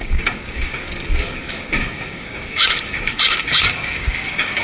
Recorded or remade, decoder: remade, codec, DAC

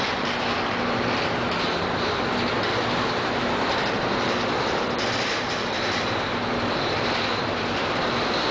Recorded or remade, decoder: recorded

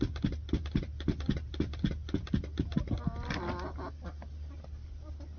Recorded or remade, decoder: recorded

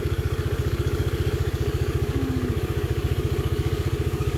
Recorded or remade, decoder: remade, codec, DAC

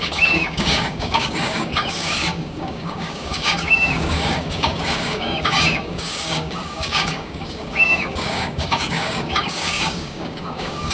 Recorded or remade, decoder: remade, codec, DAC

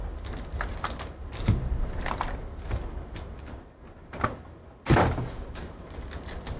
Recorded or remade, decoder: recorded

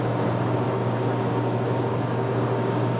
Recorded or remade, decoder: remade, codec, DAC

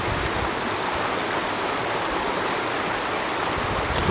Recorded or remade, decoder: recorded